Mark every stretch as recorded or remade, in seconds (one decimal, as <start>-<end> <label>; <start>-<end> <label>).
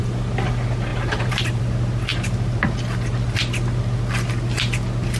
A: 0.0-0.9 recorded; 0.9-1.6 remade; 1.6-2.1 recorded; 2.1-3.1 remade; 3.1-5.2 recorded